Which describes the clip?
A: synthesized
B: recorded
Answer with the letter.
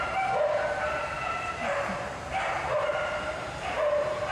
A